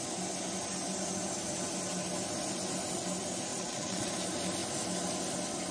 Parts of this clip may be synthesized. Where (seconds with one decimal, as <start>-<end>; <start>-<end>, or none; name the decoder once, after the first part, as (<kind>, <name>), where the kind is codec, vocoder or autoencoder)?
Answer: 3.5-4.1 (vocoder, Vocos)